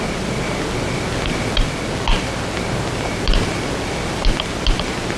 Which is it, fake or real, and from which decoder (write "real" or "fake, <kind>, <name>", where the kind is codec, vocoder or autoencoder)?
real